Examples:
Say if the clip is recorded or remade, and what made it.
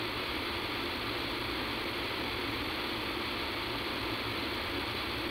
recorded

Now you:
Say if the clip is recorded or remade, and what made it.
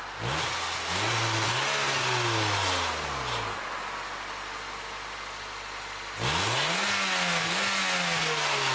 recorded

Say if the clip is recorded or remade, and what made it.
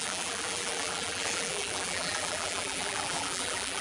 remade, vocoder, BigVGAN v2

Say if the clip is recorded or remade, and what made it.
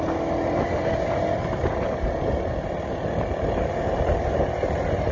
recorded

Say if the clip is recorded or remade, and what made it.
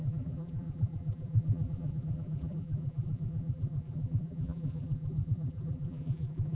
remade, vocoder, BigVGAN v2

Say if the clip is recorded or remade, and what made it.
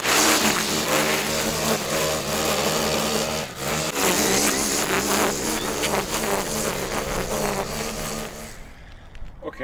recorded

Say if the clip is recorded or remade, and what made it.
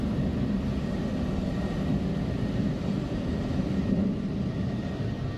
recorded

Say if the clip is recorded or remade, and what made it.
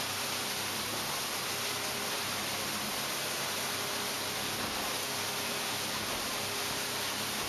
recorded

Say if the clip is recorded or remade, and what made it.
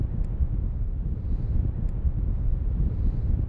recorded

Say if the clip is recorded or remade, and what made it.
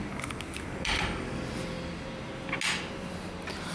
recorded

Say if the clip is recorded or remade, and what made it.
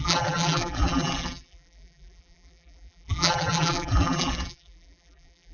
remade, vocoder, BigVGAN v2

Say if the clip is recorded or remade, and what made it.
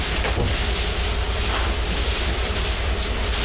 recorded